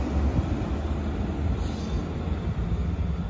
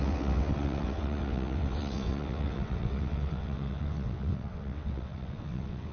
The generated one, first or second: second